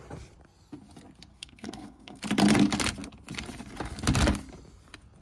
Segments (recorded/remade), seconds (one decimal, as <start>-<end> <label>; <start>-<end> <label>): 0.0-1.3 recorded; 1.3-2.2 remade; 2.2-5.2 recorded